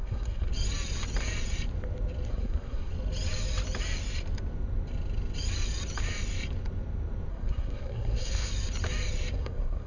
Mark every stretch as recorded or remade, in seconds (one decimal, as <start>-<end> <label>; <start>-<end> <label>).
0.0-0.5 remade; 0.5-2.3 recorded; 2.3-2.9 remade; 2.9-7.3 recorded; 7.3-8.5 remade; 8.5-9.3 recorded; 9.3-9.9 remade